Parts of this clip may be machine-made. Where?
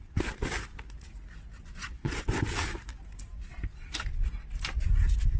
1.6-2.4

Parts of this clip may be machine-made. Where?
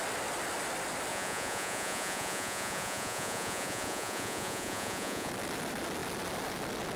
1.1-5.3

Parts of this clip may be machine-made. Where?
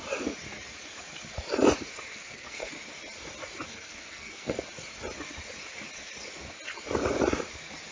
2.1-2.7; 3.7-4.5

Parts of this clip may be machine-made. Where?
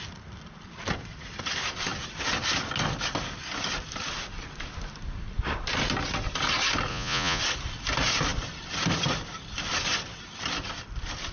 6.9-7.4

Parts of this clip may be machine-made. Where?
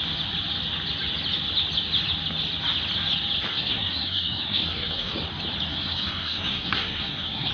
3.5-5.1; 5.7-7.5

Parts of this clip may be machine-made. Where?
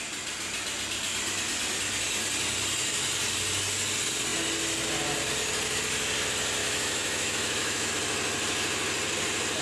6.6-7.9